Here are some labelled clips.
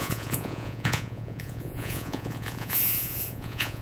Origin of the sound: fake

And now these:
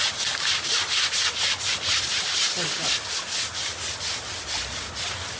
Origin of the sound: real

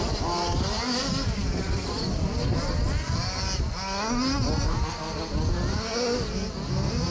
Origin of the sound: real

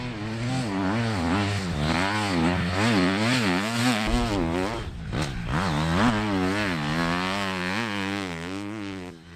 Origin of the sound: real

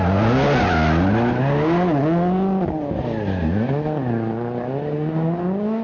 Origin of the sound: real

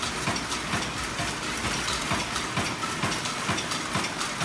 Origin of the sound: real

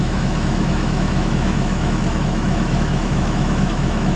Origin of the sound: fake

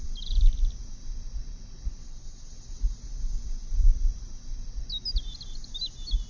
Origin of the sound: real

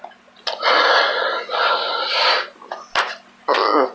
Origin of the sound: real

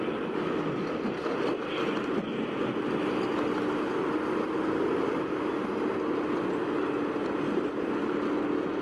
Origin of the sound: real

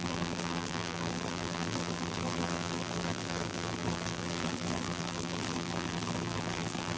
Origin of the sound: fake